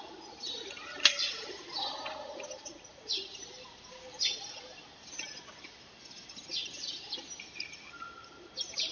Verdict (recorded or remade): recorded